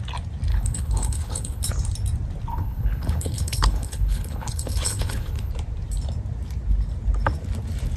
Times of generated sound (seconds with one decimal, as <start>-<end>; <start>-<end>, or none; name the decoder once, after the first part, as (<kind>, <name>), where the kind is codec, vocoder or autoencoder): 0.5-1.7 (codec, HILCodec); 2.5-5.5